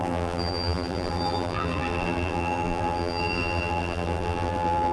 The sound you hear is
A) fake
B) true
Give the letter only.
A